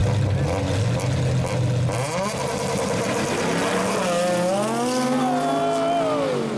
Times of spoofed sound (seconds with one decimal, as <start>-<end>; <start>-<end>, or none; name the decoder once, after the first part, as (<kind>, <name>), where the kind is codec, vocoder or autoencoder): none